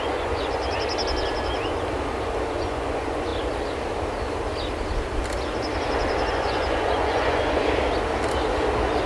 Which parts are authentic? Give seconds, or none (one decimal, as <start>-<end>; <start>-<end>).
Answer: 0.6-2.5; 3.3-6.3; 7.6-9.1